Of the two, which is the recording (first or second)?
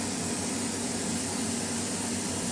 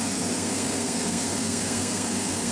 first